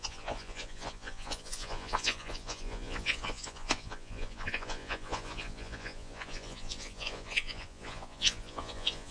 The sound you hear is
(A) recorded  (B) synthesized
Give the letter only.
B